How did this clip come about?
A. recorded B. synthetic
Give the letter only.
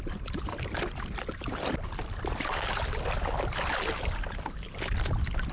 A